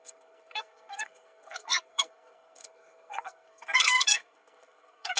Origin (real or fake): fake